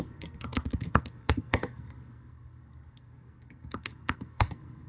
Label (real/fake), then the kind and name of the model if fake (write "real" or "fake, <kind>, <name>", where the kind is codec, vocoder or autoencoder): fake, codec, SNAC